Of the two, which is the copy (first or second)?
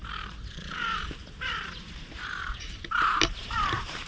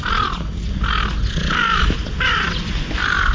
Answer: first